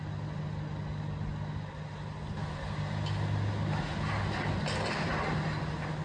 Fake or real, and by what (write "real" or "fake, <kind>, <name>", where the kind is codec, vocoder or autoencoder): real